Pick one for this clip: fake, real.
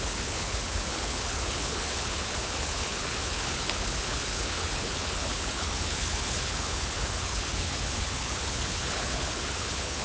fake